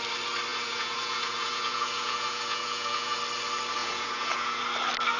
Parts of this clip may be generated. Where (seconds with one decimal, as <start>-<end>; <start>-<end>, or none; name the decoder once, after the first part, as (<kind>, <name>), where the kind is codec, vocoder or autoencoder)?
0.5-3.2 (vocoder, Vocos); 3.8-4.6